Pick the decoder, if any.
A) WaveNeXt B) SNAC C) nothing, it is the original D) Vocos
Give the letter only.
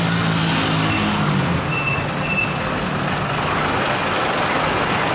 C